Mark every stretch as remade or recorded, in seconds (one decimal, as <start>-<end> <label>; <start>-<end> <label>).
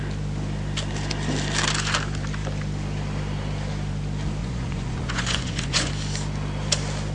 0.0-4.4 recorded; 4.4-5.9 remade; 5.9-7.1 recorded